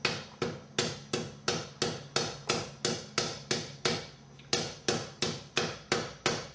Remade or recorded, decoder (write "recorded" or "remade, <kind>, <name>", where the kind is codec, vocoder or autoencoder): recorded